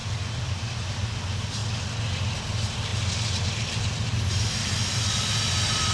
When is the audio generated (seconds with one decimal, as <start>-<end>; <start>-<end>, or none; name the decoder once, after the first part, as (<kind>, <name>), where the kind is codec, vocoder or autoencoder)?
0.0-1.6 (vocoder, BigVGAN v2); 2.4-5.9